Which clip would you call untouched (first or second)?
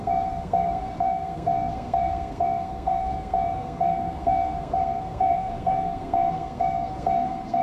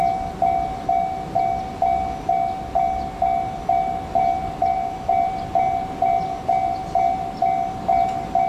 second